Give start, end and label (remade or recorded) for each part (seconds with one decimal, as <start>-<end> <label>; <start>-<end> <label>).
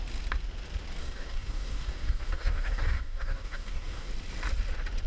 0.0-1.0 recorded; 1.0-4.1 remade; 4.1-5.1 recorded